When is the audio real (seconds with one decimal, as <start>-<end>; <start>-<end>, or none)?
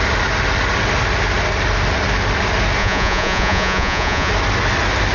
0.0-2.8; 4.3-5.1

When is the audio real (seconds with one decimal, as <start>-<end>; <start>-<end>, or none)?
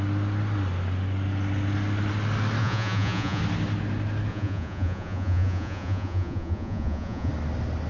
0.0-2.6; 3.4-4.3; 7.3-7.9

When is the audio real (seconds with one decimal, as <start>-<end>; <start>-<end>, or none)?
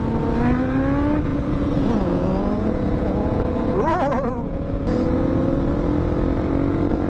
0.0-1.3; 5.4-7.1